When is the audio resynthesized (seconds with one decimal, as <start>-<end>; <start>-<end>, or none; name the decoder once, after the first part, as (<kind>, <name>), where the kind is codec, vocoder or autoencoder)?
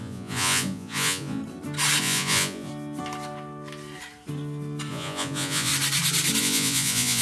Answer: 0.0-1.4 (vocoder, Vocos); 2.0-2.7; 4.9-5.7; 6.4-7.2